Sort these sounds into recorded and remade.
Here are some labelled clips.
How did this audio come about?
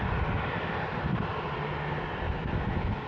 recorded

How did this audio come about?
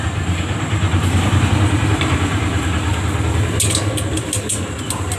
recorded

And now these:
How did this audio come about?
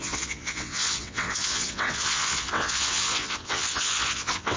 remade